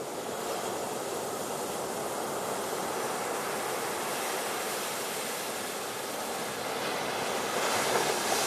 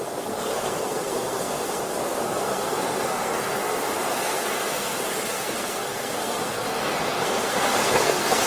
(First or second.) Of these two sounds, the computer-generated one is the second